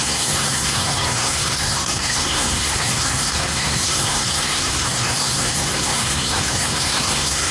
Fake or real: fake